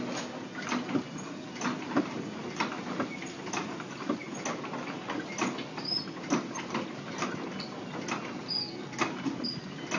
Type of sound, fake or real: real